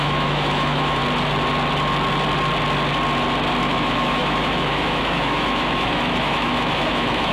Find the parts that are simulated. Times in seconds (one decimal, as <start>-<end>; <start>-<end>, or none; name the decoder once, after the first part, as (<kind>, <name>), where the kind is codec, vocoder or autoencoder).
0.0-1.0 (autoencoder, DAC-VAE); 3.6-7.3